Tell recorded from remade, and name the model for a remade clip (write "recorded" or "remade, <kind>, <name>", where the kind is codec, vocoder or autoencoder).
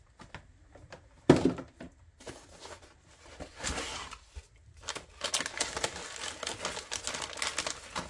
recorded